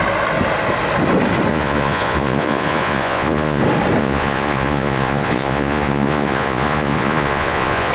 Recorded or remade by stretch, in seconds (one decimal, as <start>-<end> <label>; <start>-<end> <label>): 0.0-1.5 recorded; 1.5-3.6 remade; 3.6-4.0 recorded; 4.0-7.9 remade